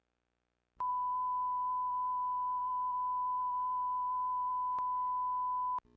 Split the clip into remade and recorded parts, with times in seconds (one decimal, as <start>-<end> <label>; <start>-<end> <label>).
0.0-0.9 recorded; 0.9-4.5 remade; 4.5-6.0 recorded